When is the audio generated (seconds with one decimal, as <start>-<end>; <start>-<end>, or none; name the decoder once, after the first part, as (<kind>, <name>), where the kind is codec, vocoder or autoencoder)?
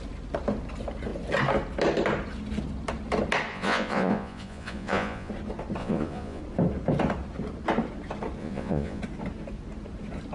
3.5-5.3 (vocoder, Vocos); 5.8-6.4; 8.4-9.0